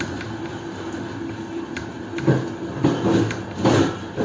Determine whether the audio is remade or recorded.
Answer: recorded